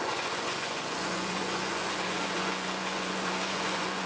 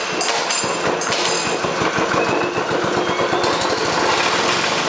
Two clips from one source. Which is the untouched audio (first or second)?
second